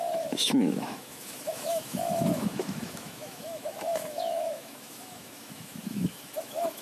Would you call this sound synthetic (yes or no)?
yes